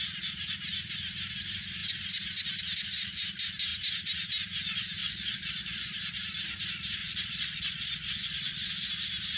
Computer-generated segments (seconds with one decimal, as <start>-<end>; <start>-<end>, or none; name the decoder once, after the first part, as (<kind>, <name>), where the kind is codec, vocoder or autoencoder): 5.0-6.0 (vocoder, Vocos); 7.0-8.7